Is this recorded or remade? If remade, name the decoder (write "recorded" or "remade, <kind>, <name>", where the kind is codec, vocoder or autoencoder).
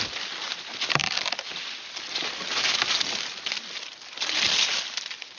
recorded